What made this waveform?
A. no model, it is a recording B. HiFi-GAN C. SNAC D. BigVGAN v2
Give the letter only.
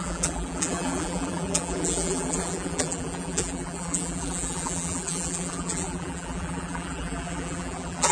D